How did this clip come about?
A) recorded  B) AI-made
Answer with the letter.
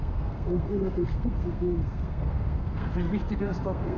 B